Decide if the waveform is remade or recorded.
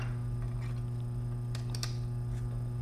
recorded